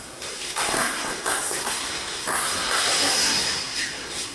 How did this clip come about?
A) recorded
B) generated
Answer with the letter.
B